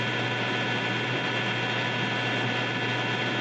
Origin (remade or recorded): recorded